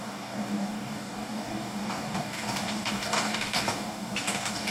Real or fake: fake